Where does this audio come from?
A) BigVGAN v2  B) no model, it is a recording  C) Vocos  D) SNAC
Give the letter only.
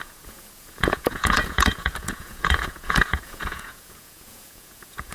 C